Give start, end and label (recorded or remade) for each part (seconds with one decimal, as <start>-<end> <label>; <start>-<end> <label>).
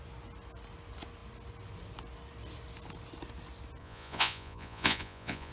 0.0-3.8 recorded; 3.8-5.5 remade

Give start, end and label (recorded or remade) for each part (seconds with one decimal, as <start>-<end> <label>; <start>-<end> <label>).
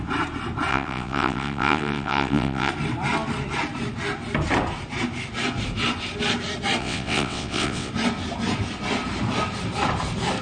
0.0-0.7 recorded; 0.7-2.7 remade; 2.7-6.8 recorded; 6.8-7.9 remade; 7.9-10.4 recorded